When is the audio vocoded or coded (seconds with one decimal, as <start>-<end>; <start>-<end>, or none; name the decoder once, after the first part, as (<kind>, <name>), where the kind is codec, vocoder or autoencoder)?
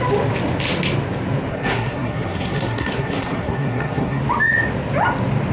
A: 1.5-4.2 (codec, SNAC)